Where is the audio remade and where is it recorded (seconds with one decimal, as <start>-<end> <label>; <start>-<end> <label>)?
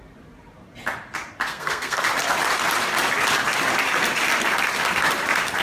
0.0-1.5 recorded; 1.5-2.0 remade; 2.0-5.6 recorded